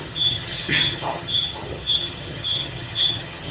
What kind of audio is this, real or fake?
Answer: fake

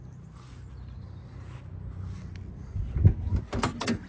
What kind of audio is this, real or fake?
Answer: real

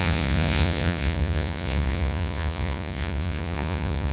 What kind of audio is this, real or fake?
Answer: fake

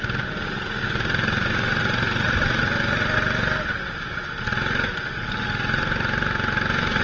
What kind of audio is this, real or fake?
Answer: real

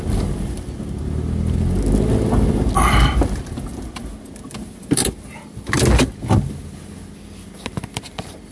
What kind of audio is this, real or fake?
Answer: real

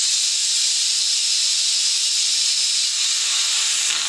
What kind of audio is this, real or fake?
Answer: real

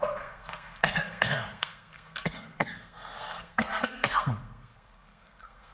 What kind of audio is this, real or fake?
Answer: fake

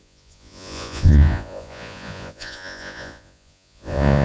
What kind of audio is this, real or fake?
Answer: fake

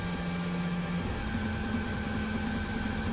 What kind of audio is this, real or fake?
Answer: real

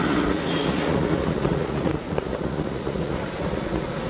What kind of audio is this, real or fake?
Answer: fake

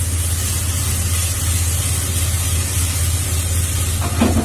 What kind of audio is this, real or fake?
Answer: real